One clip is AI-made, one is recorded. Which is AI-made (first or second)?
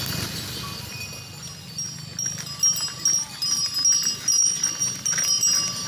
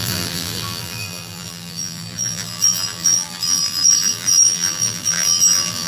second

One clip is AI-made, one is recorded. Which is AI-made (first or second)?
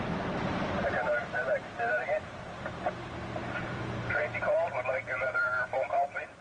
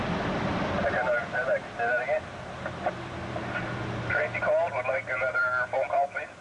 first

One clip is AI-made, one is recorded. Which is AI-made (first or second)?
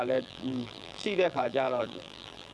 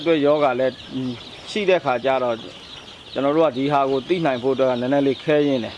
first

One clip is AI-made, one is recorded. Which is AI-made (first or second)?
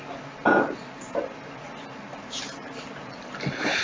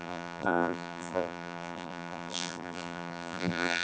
second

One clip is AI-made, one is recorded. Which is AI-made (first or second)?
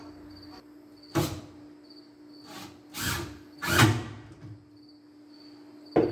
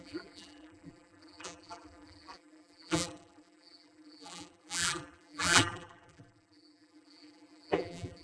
second